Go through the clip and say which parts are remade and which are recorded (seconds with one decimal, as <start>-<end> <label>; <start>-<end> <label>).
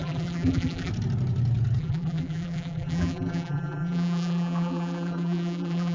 0.0-0.9 remade; 0.9-1.8 recorded; 1.8-5.9 remade